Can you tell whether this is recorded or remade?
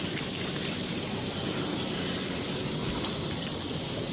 recorded